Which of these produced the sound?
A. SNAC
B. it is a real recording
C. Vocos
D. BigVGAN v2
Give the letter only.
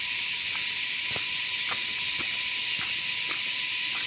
B